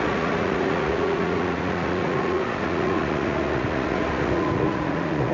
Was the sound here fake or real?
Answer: fake